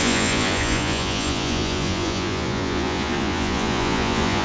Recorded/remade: remade